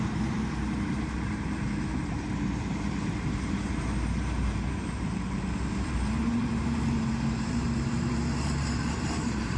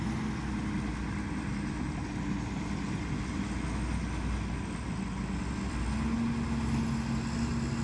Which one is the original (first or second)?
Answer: second